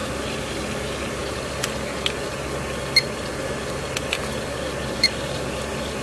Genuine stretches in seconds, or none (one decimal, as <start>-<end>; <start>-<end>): 1.2-4.8